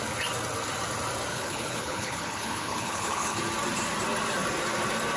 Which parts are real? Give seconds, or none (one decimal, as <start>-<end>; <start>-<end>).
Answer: 0.0-1.3; 3.4-5.2